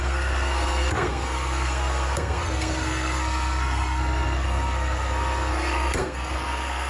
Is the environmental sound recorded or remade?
remade